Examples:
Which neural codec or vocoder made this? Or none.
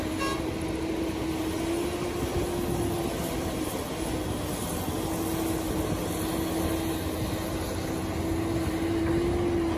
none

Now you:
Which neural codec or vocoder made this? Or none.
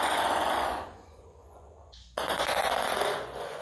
vocoder, Vocos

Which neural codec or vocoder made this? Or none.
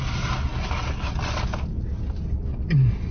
none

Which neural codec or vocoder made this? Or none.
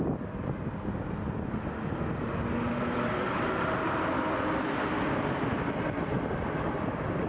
none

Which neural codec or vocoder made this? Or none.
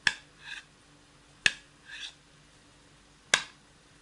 none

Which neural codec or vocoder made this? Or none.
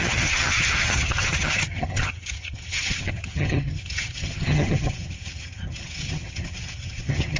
vocoder, HiFi-GAN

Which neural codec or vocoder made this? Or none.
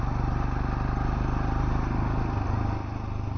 none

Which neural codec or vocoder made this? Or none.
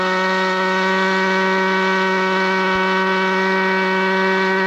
none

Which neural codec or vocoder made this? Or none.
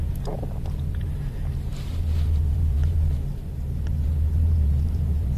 vocoder, BigVGAN v2